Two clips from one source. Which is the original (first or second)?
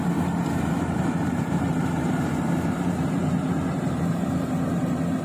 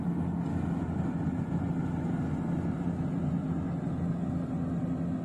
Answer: second